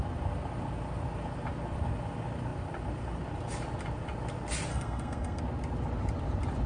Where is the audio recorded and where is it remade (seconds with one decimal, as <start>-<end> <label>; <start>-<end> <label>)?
0.0-4.7 recorded; 4.7-5.4 remade; 5.4-6.7 recorded